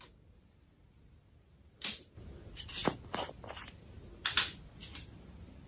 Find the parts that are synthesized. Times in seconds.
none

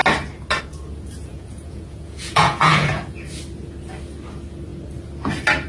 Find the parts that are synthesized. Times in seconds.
1.3-3.0 (vocoder, Vocos)

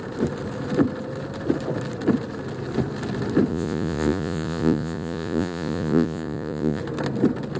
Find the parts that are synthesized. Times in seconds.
3.5-6.8 (vocoder, Vocos)

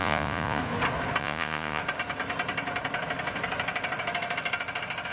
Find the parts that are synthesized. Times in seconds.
0.0-0.6 (vocoder, Vocos); 1.2-1.8

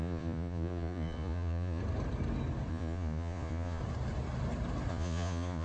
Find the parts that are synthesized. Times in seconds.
0.0-1.8 (vocoder, Vocos); 2.7-3.8; 4.9-5.6

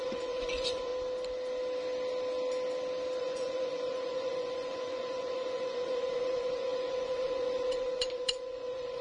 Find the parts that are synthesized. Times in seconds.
0.0-0.9 (vocoder, Vocos); 3.2-9.0